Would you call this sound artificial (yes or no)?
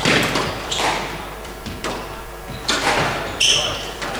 yes